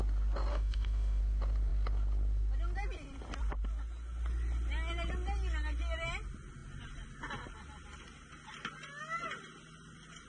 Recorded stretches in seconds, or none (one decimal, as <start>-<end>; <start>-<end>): 0.0-0.5; 1.2-10.3